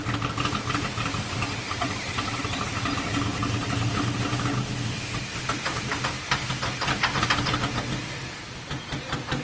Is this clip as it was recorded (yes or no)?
yes